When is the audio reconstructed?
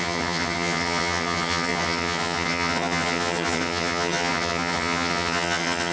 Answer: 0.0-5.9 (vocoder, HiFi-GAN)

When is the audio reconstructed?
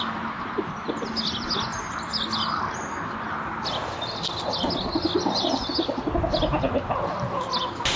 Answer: none